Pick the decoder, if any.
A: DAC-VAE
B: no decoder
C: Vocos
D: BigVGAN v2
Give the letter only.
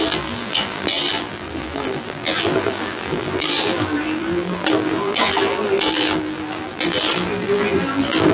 D